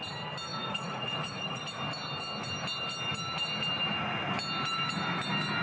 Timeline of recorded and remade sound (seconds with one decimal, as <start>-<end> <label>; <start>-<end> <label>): 0.0-0.5 recorded; 0.5-1.6 remade; 1.6-5.6 recorded

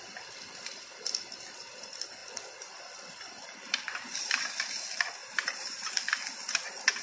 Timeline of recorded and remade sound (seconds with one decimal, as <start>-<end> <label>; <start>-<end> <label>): 0.0-5.2 recorded; 5.2-5.9 remade; 5.9-7.0 recorded

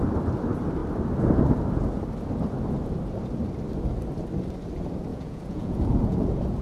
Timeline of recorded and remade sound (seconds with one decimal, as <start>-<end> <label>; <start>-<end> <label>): 0.0-5.1 recorded; 5.1-6.6 remade

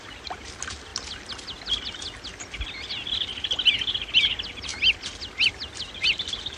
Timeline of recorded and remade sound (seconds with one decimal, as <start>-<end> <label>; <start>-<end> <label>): 0.0-6.6 recorded